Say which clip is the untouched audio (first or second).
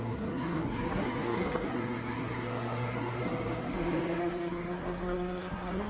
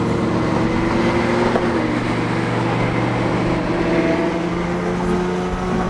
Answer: second